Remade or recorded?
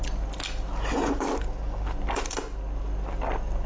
recorded